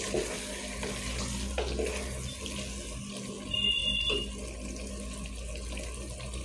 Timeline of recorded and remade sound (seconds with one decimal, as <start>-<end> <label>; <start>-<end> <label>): 0.0-6.4 recorded